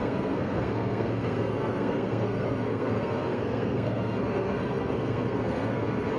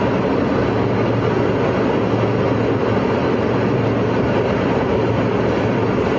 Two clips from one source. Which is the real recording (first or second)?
second